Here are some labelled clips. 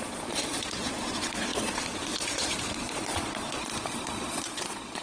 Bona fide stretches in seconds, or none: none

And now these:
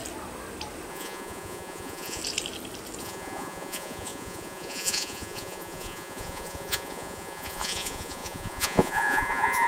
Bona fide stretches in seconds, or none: 0.0-0.9; 2.2-3.0

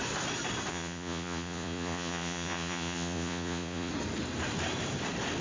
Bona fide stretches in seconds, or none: 0.0-0.7; 3.9-5.4

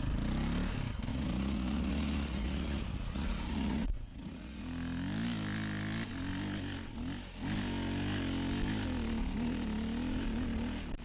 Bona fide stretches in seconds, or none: 0.0-1.1; 4.6-11.0

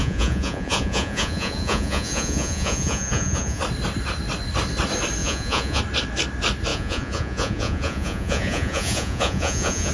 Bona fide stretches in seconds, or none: 3.6-5.2; 5.8-6.7

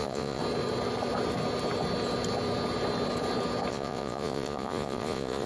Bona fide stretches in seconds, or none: 0.4-3.7

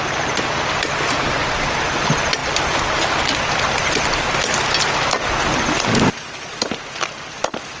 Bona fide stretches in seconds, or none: 0.0-7.8